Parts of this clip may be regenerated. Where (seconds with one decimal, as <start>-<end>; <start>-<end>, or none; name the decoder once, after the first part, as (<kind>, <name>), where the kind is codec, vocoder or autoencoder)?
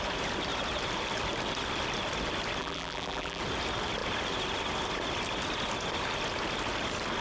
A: 2.6-3.4 (vocoder, BigVGAN v2)